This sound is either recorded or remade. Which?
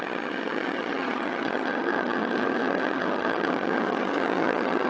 remade